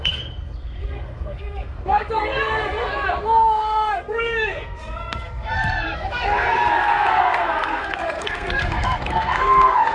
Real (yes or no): no